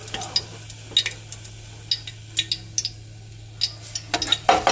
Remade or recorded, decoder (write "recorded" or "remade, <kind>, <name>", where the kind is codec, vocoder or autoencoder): recorded